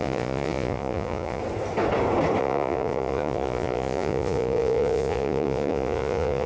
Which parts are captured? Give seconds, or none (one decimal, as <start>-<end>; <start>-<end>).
1.4-2.4